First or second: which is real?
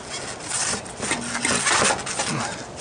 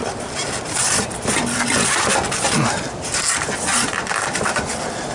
first